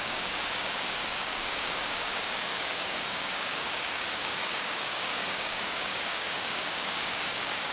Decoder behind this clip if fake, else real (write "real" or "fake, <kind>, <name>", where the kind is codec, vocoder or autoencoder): fake, codec, DAC